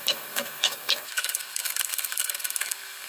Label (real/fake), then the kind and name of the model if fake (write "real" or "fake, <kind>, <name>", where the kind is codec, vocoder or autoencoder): fake, codec, SNAC